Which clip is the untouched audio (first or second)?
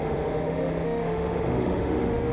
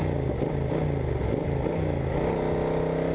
second